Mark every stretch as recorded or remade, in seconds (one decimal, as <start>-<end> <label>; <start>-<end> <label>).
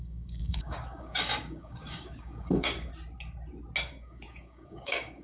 0.0-2.9 remade; 2.9-3.9 recorded; 3.9-5.2 remade